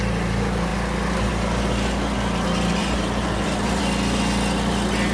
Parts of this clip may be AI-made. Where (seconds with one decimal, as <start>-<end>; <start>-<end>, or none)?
2.8-3.8